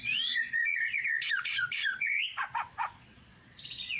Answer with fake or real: fake